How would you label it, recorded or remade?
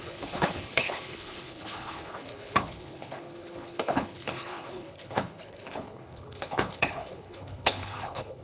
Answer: remade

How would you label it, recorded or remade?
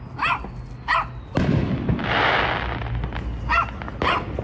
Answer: recorded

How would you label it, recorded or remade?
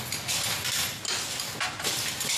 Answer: recorded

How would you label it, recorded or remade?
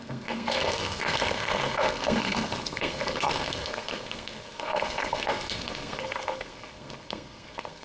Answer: remade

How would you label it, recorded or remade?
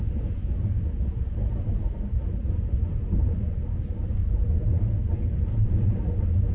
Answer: remade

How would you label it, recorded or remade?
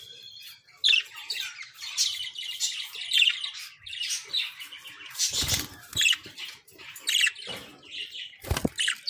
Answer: recorded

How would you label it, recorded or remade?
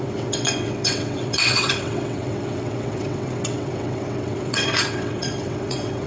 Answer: remade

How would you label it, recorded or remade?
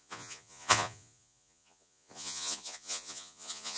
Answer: remade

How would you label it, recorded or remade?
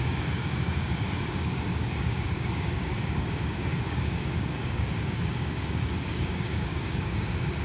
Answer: remade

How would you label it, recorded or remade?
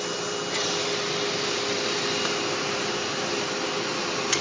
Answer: recorded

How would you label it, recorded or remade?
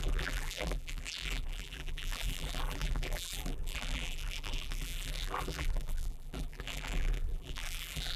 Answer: remade